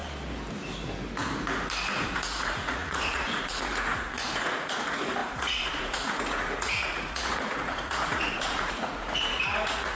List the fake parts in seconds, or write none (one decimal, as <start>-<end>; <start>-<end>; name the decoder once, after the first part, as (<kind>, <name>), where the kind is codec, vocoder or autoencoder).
1.9-10.0 (vocoder, Vocos)